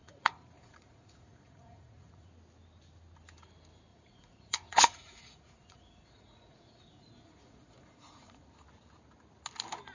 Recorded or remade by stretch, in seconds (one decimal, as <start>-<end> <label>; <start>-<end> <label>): 0.0-2.3 remade; 2.3-3.9 recorded; 3.9-8.4 remade; 8.4-9.9 recorded